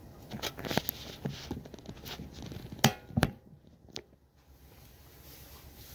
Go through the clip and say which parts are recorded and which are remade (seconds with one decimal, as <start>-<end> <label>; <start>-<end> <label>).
0.0-5.9 recorded